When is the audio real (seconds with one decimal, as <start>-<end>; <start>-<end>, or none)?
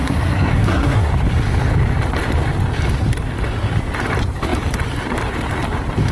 1.1-6.1